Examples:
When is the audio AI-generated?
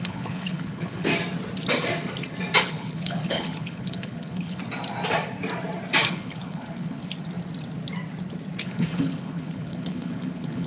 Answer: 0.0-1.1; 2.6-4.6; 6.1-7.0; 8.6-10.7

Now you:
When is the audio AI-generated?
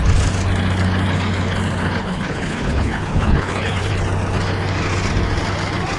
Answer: 2.0-3.9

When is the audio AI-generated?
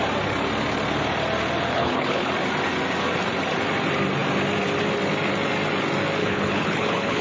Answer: 1.7-2.3; 6.2-7.2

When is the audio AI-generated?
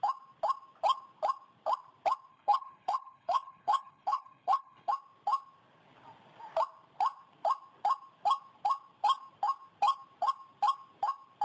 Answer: 2.3-4.9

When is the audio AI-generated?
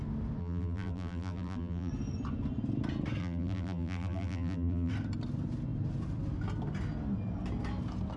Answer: 0.4-1.9; 3.2-4.9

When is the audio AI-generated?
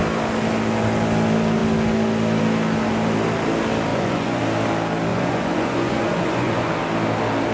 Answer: 3.9-4.4; 5.1-6.7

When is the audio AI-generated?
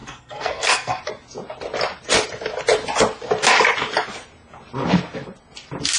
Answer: 0.0-1.0